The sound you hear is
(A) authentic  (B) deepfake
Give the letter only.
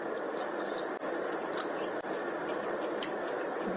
A